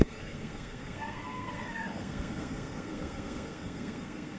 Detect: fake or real fake